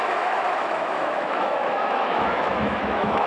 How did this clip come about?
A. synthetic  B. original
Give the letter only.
A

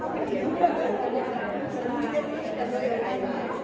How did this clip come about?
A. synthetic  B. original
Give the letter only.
A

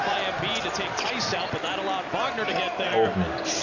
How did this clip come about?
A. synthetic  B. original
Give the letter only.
B